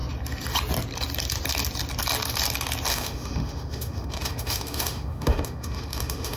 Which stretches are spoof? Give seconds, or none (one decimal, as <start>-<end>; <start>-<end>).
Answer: 2.9-6.4